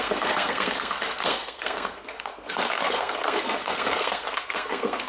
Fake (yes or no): yes